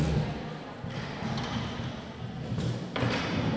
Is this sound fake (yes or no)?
no